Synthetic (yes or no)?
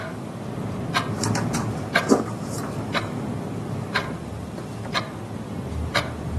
yes